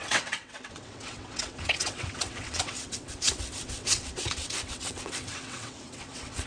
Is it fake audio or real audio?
fake